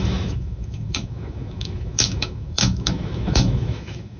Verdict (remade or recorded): remade